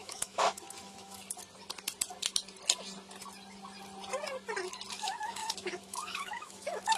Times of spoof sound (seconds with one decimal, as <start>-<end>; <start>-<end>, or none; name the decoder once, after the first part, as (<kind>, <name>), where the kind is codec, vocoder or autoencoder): 0.0-1.2 (autoencoder, DAC-VAE); 4.9-7.0